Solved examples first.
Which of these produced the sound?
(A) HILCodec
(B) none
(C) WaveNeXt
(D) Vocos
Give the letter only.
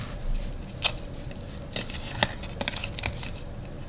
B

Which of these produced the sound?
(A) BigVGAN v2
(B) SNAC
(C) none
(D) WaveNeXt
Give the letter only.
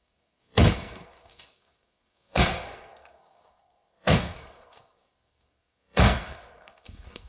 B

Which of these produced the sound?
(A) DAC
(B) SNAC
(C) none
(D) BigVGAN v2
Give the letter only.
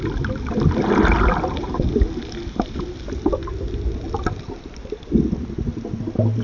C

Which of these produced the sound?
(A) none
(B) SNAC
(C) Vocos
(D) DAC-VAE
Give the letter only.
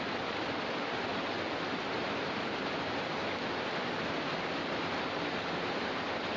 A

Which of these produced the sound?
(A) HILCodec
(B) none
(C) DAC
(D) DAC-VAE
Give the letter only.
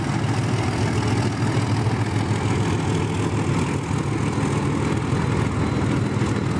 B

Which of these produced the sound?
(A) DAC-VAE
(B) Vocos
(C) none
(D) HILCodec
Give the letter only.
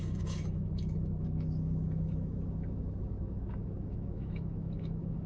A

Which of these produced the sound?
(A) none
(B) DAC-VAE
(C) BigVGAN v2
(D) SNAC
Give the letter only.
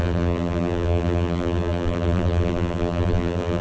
C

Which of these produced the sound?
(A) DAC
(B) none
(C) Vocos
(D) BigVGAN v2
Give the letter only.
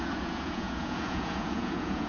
C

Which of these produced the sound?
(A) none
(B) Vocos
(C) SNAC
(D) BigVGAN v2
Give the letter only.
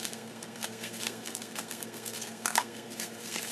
C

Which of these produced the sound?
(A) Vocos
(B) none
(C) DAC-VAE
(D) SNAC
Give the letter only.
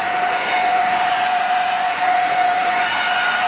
A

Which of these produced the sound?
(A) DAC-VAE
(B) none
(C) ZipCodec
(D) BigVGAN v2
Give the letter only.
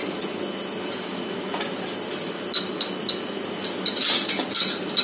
B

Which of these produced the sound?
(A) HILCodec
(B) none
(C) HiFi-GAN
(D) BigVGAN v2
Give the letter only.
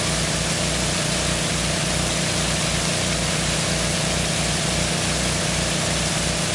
B